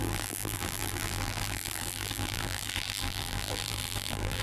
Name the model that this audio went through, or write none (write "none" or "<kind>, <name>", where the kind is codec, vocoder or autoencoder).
vocoder, BigVGAN v2